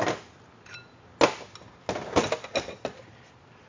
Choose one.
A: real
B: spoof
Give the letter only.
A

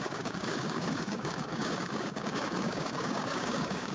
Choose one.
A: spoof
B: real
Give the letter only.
A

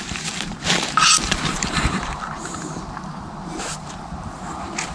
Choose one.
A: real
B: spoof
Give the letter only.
B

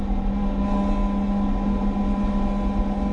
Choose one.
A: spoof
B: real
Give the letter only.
B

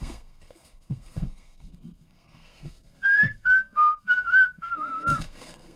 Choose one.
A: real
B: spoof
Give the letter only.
B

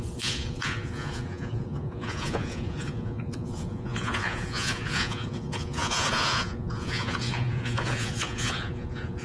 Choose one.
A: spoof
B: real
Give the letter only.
A